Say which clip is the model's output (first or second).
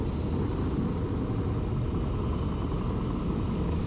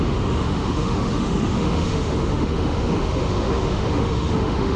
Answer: second